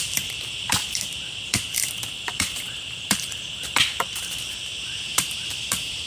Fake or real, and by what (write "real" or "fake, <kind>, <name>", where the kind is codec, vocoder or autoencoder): fake, vocoder, BigVGAN v2